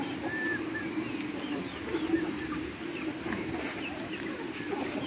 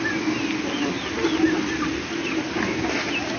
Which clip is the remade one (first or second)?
first